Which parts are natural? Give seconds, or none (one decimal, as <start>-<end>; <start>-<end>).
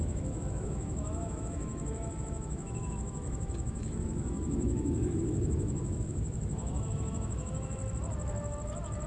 7.8-9.1